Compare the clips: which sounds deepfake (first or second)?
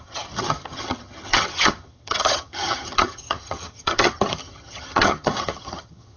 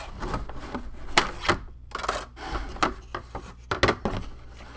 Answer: first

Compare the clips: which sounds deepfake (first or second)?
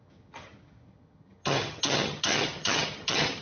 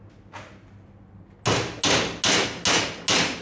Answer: first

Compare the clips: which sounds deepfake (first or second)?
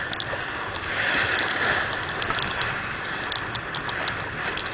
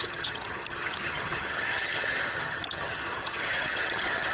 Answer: second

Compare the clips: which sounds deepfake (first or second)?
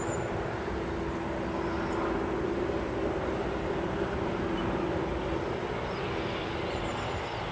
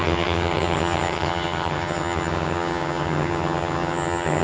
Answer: second